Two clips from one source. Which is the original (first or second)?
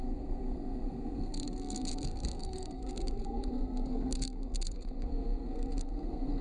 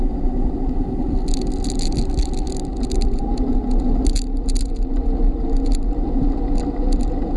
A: second